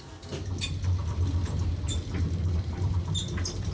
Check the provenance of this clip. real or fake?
real